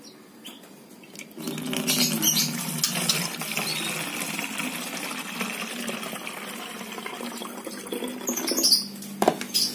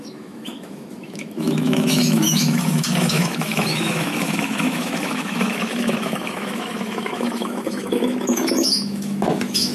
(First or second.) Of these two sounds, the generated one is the second